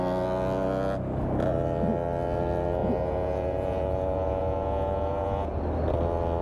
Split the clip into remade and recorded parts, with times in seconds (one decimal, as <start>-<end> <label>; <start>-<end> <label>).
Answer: 0.0-2.8 recorded; 2.8-5.6 remade; 5.6-6.4 recorded